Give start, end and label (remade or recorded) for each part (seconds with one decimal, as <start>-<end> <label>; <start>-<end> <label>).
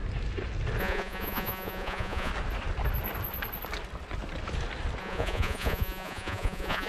0.0-0.8 recorded; 0.8-2.3 remade; 2.3-5.0 recorded; 5.0-6.9 remade